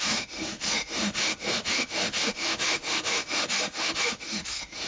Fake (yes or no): yes